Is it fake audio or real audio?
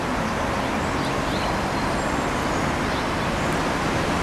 real